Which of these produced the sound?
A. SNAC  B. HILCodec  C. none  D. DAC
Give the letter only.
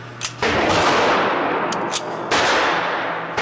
C